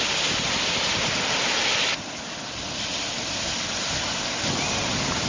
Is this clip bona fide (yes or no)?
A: yes